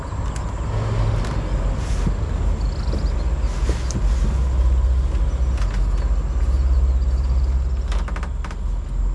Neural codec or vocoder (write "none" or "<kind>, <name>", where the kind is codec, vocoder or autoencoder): none